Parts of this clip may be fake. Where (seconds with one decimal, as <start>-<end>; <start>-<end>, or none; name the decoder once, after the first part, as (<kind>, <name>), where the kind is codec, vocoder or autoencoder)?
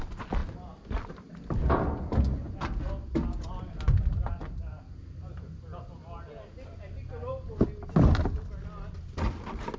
none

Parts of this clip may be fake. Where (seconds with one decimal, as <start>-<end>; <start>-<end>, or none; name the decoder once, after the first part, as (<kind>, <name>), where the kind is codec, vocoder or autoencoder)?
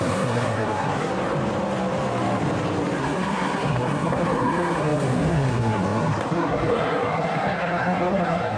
0.0-1.1 (codec, SNAC); 3.0-8.6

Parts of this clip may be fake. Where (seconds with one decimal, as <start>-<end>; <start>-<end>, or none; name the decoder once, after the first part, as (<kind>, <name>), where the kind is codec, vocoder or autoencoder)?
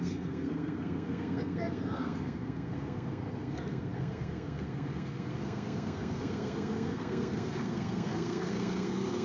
0.0-9.2 (codec, SNAC)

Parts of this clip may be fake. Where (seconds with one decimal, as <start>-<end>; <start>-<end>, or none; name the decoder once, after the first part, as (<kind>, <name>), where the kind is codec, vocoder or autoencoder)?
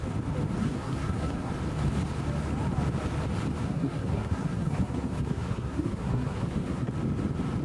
0.6-1.5 (codec, SNAC); 3.6-6.9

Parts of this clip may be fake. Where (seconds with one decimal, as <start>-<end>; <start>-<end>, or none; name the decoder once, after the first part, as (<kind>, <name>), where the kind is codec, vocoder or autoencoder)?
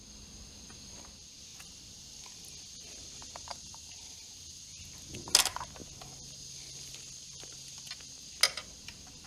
none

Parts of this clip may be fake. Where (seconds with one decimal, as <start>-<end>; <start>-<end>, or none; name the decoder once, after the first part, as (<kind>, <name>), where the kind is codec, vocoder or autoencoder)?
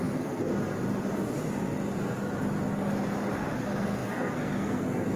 0.0-0.5 (codec, SNAC); 3.6-5.2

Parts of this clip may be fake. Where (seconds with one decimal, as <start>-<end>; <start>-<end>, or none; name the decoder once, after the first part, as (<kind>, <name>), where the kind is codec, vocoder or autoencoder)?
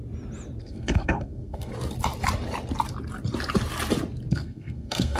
0.6-1.7 (codec, SNAC); 4.3-5.2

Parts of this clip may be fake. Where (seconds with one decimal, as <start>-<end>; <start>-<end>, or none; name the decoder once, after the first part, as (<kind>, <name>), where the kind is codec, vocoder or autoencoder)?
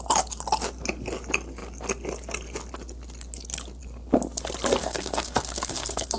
4.8-6.2 (codec, SNAC)